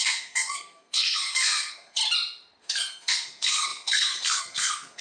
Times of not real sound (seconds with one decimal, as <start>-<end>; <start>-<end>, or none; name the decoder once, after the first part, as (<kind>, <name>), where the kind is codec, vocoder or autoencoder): 0.0-2.0 (codec, SNAC); 2.6-5.0